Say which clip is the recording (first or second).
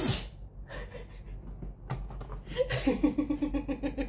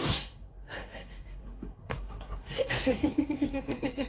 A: first